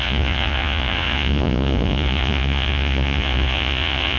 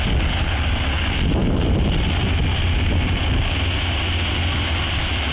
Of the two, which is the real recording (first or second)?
second